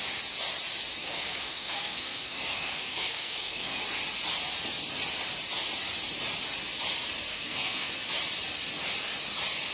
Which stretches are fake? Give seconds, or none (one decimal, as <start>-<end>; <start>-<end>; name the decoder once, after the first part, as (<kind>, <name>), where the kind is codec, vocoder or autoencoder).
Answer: 1.0-3.8 (codec, SNAC); 7.3-7.9